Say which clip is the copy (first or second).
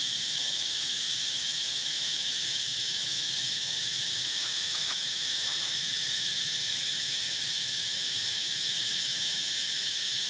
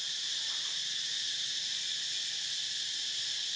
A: first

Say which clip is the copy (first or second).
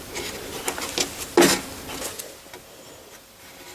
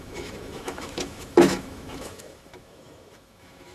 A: second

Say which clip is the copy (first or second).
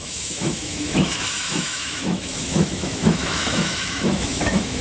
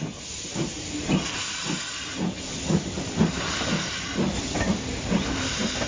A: first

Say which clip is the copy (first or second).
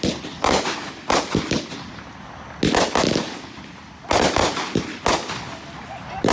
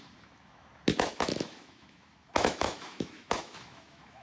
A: second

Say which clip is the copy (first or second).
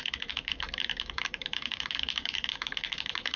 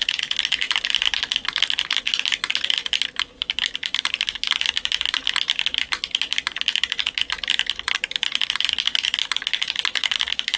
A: first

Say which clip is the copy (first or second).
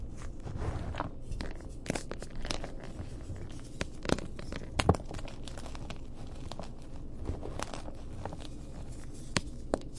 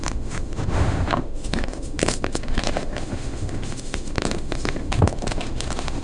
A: second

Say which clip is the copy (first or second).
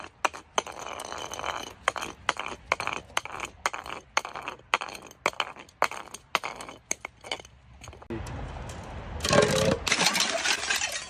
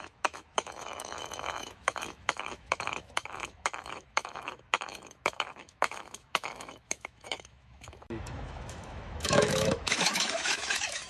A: second